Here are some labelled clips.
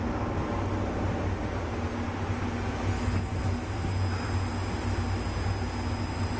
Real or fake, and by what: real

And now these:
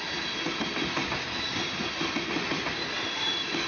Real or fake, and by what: real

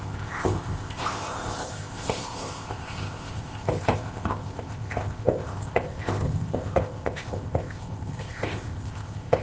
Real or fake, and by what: fake, codec, ZipCodec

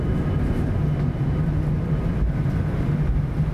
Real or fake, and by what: real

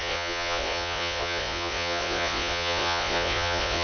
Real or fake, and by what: fake, vocoder, Vocos